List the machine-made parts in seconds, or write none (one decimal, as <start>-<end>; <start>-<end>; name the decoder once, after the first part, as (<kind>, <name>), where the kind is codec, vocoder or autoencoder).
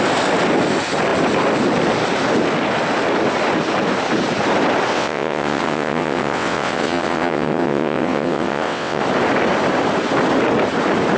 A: 4.9-9.0 (vocoder, WaveNeXt)